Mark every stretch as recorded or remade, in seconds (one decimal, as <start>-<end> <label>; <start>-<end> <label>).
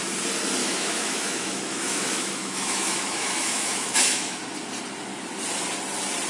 0.0-0.6 recorded; 0.6-4.4 remade; 4.4-6.3 recorded